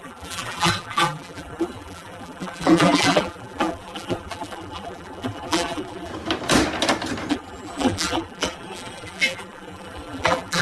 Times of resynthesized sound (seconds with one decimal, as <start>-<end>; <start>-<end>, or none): 0.0-6.1; 7.3-10.6